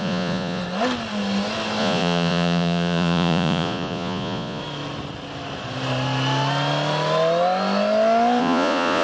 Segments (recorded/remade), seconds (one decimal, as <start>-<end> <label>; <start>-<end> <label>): 0.0-0.6 remade; 0.6-1.8 recorded; 1.8-4.6 remade; 4.6-8.4 recorded; 8.4-9.0 remade